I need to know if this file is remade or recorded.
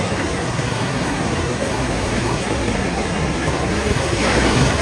remade